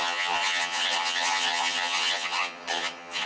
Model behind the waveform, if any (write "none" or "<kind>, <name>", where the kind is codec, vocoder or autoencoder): vocoder, HiFi-GAN